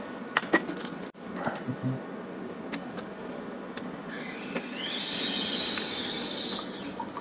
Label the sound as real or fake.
real